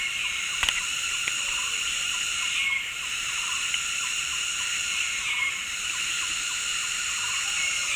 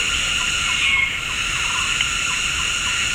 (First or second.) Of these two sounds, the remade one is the first